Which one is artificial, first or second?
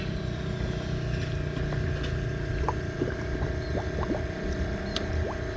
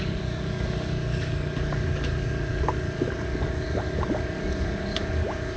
second